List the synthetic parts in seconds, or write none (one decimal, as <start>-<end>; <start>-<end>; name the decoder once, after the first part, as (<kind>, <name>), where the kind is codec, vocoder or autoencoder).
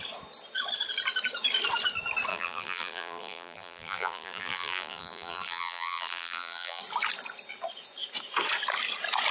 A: 2.3-6.8 (vocoder, BigVGAN v2)